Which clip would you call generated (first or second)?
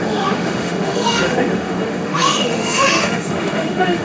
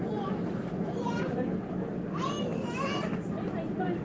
first